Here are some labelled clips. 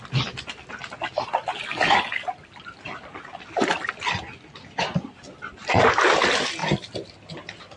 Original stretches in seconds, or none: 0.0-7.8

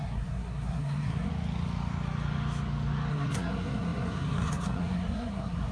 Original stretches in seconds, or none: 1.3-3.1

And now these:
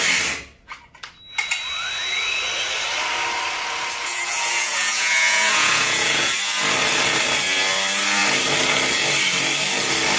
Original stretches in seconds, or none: 0.0-4.0; 6.3-10.2

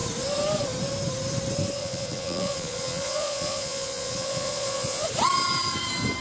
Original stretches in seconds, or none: 0.0-1.8; 5.1-6.2